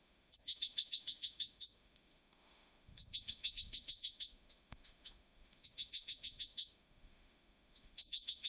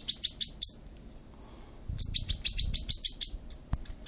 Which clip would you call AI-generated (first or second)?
first